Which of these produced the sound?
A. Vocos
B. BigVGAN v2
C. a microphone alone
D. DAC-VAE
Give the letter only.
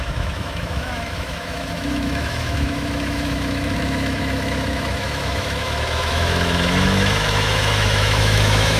D